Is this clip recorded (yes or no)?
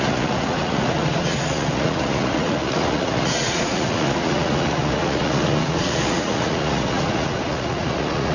no